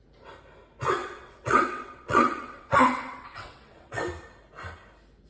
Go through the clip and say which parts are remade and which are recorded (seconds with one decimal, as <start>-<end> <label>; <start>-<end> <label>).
0.0-1.0 recorded; 1.0-4.0 remade; 4.0-5.3 recorded